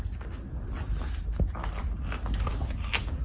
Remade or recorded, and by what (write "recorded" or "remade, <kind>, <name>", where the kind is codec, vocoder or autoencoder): recorded